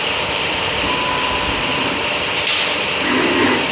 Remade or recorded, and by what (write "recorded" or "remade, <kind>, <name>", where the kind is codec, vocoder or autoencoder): recorded